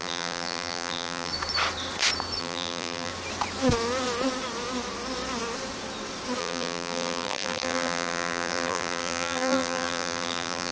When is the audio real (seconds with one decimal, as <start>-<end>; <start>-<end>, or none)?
1.3-2.4; 3.1-6.4

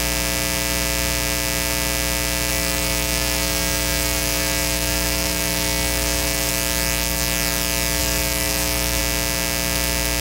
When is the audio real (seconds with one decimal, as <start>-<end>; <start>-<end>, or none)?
0.0-2.5; 6.5-8.0; 9.0-10.2

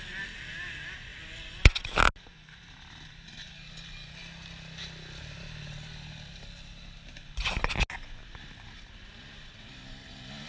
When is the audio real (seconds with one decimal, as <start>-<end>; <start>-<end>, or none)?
0.0-10.5

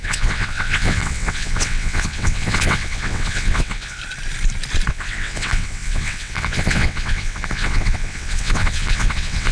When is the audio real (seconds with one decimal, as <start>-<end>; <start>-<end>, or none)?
4.0-4.9